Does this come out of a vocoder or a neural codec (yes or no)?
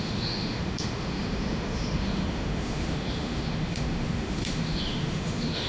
yes